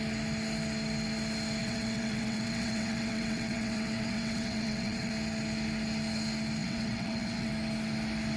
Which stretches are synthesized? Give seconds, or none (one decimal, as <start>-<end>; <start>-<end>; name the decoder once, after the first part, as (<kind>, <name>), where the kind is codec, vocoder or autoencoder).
1.6-5.1 (vocoder, WaveNeXt); 6.6-7.5